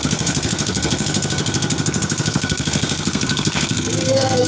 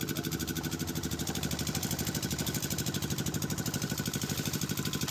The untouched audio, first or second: second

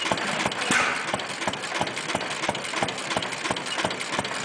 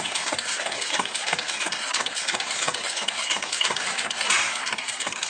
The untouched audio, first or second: first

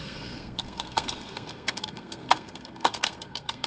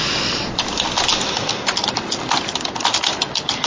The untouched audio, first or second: second